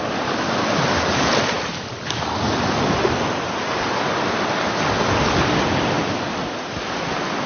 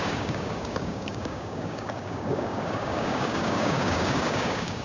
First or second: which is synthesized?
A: second